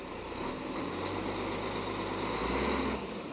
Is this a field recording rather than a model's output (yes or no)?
yes